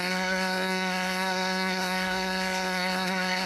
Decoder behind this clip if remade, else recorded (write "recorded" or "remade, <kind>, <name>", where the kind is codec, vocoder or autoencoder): remade, codec, SNAC